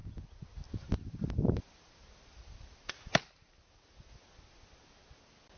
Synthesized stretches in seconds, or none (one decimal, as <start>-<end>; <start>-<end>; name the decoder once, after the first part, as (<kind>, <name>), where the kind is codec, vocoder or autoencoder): none

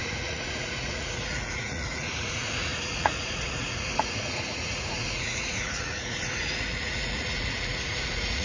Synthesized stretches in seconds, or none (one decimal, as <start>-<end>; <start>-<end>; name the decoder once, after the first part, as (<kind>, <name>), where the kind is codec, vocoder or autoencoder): 0.0-8.4 (vocoder, Vocos)

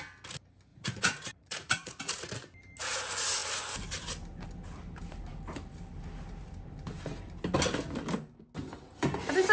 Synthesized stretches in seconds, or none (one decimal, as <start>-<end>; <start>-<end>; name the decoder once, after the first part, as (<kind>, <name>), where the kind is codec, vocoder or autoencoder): 0.7-2.3 (vocoder, Vocos)